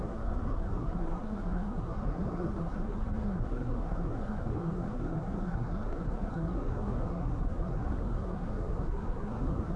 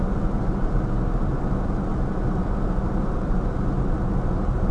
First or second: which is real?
second